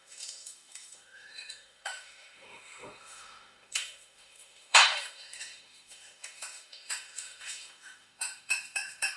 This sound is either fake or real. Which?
fake